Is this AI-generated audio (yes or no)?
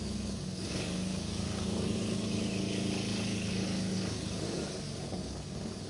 yes